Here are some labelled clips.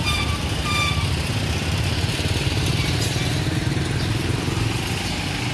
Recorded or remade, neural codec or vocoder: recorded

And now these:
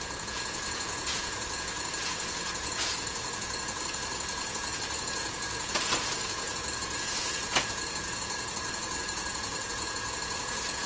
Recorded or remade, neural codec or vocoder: remade, vocoder, Vocos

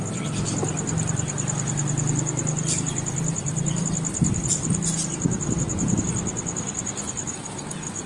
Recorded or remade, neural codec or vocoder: recorded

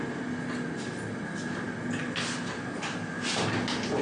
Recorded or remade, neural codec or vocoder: recorded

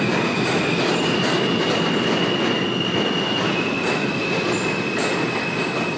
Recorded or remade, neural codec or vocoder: recorded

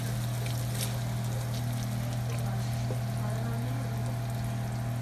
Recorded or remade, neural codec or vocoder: recorded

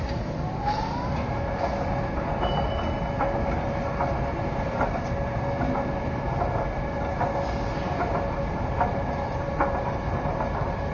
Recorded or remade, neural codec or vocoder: recorded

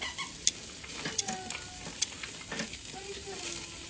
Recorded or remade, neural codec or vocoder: recorded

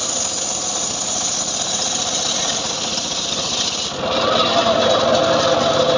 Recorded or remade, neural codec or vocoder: recorded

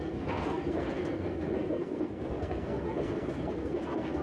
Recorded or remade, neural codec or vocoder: remade, codec, SNAC